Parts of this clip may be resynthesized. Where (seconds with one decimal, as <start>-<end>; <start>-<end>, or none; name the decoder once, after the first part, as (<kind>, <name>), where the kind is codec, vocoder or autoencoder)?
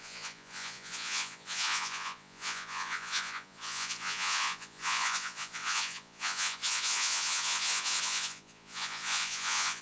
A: 0.0-9.8 (vocoder, Vocos)